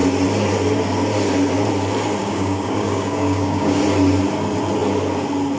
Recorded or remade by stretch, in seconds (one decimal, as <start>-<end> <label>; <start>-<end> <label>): 0.0-2.2 recorded; 2.2-3.8 remade; 3.8-5.6 recorded